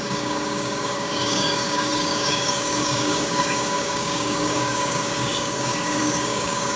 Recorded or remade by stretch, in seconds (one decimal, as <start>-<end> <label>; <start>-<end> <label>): 0.0-6.8 remade